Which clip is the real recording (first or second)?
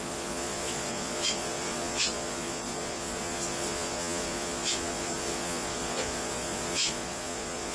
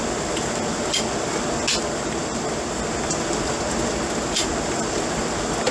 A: second